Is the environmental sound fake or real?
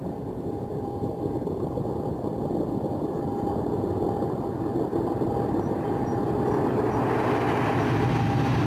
real